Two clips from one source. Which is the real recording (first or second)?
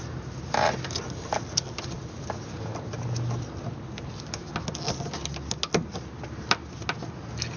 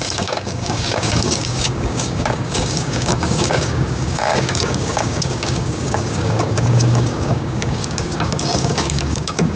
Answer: first